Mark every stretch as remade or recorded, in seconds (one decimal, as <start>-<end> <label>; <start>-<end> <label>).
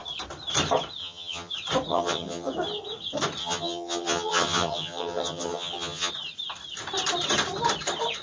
0.0-1.0 recorded; 1.0-1.5 remade; 1.5-1.9 recorded; 1.9-2.5 remade; 2.5-3.4 recorded; 3.4-6.1 remade; 6.1-8.2 recorded